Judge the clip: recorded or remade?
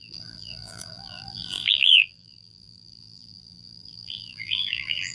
remade